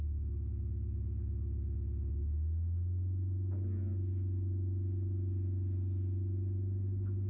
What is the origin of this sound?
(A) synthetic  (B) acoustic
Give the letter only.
B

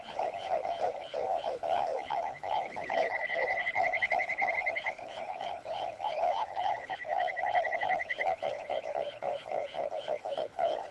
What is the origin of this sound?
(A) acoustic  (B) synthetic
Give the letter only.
B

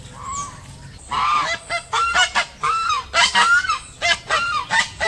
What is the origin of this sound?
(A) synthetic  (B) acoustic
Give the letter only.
B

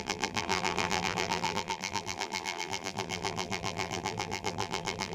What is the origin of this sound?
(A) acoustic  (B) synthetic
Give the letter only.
B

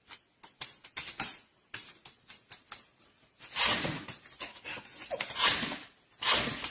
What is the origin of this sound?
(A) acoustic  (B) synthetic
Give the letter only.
A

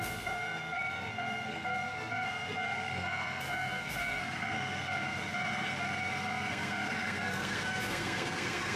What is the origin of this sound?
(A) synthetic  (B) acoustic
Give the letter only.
A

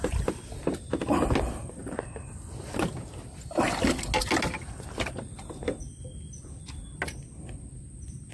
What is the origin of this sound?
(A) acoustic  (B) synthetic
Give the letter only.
A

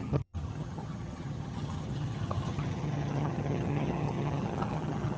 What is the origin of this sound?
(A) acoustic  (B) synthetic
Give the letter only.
B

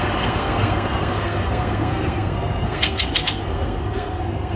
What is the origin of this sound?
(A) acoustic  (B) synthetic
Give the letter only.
B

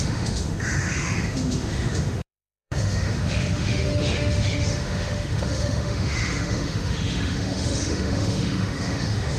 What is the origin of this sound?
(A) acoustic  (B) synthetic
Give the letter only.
B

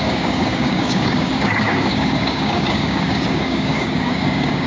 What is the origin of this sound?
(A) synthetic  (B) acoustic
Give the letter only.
A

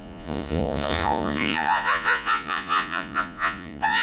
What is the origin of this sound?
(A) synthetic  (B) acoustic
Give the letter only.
A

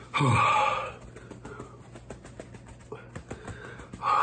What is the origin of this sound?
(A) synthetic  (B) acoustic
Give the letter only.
B